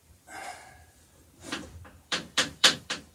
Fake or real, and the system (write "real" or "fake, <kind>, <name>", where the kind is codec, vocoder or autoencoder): fake, vocoder, BigVGAN v2